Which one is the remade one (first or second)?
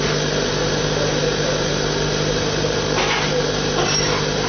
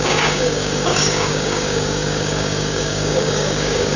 second